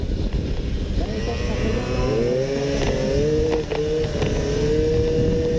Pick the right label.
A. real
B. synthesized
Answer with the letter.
A